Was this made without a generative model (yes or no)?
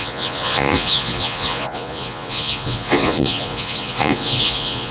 no